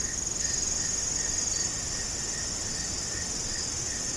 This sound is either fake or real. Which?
real